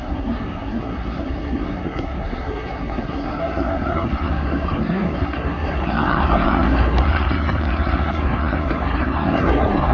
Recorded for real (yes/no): no